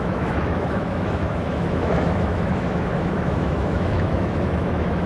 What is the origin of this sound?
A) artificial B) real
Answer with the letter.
A